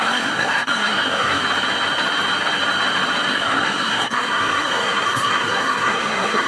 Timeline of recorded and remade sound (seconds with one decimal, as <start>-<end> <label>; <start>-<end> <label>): 0.0-1.4 remade; 1.4-3.3 recorded; 3.3-6.5 remade